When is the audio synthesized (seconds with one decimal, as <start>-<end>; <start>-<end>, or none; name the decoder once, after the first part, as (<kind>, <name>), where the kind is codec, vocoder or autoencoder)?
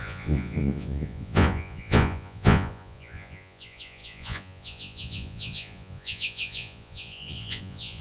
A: 0.0-8.0 (vocoder, Vocos)